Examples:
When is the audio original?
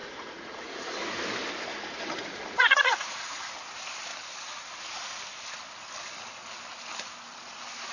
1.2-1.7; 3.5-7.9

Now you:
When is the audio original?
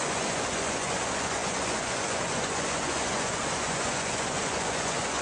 none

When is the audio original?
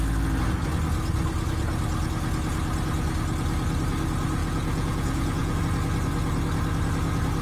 0.0-4.4; 5.6-7.4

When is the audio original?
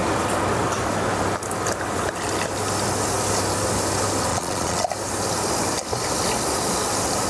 0.0-4.3; 4.9-7.3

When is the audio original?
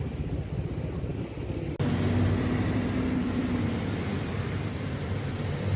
0.0-5.8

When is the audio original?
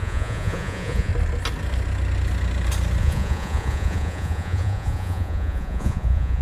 1.1-3.0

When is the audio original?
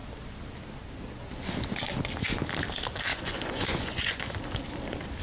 0.0-3.1; 4.2-5.2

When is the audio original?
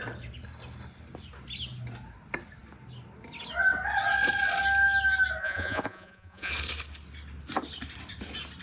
0.0-5.4; 6.5-8.6